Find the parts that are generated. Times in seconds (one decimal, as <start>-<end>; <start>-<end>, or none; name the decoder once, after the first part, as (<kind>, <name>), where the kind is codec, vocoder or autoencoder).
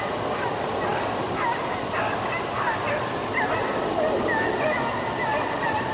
0.9-1.6 (vocoder, BigVGAN v2); 3.2-3.9